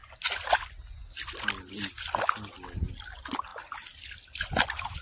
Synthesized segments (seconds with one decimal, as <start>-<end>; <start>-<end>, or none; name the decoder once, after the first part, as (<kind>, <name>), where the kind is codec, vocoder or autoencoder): none